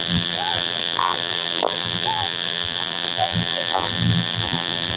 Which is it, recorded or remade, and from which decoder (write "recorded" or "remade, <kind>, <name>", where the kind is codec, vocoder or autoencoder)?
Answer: remade, vocoder, BigVGAN v2